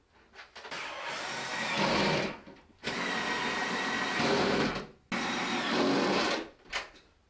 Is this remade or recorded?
recorded